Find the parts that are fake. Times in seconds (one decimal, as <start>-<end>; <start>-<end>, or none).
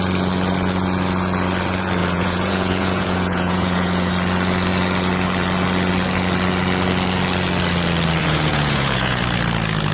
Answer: 2.0-4.1; 8.2-9.2